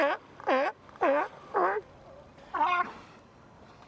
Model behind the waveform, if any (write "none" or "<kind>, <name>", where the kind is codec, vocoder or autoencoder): none